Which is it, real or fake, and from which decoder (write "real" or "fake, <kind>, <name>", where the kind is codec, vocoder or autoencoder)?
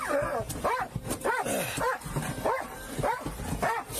real